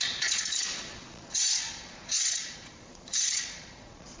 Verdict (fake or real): fake